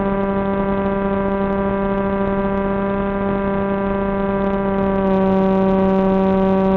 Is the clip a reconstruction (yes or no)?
no